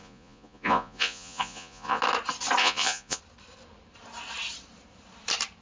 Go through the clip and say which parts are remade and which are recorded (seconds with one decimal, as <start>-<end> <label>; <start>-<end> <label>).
0.0-2.0 remade; 2.0-2.6 recorded; 2.6-3.2 remade; 3.2-5.6 recorded